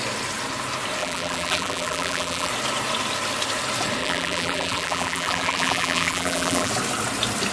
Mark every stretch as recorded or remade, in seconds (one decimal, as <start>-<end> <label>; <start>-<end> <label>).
0.0-1.0 recorded; 1.0-2.5 remade; 2.5-4.0 recorded; 4.0-6.7 remade; 6.7-7.5 recorded